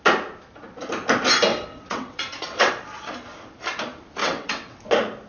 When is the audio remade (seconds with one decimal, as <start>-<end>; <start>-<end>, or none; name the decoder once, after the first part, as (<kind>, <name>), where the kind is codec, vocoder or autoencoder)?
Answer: 1.5-2.7 (vocoder, WaveNeXt); 4.2-4.8